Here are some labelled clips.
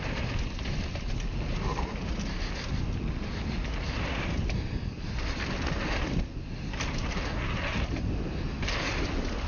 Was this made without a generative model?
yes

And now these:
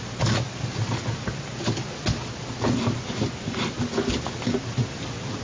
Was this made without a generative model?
yes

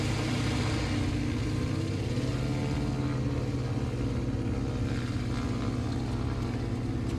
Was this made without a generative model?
yes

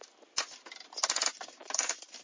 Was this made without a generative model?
yes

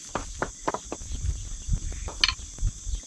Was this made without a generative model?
yes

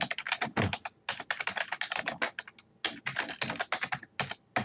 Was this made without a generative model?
yes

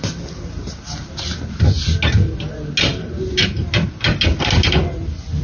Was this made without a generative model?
yes